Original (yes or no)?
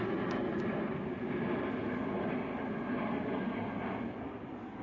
yes